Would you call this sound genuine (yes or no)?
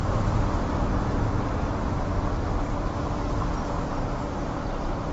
yes